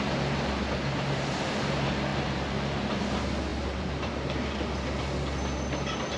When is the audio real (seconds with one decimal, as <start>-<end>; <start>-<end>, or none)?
0.0-2.1; 3.0-3.5; 4.4-6.2